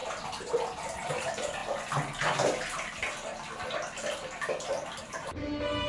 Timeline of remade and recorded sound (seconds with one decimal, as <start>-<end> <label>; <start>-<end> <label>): 0.0-1.1 recorded; 1.1-1.6 remade; 1.6-5.0 recorded; 5.0-5.9 remade